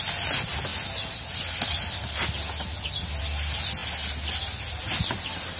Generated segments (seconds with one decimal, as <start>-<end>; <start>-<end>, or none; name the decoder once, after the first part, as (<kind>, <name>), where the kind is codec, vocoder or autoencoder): none